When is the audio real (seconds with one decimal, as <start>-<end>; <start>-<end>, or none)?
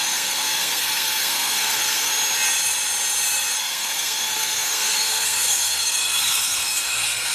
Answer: 2.1-3.6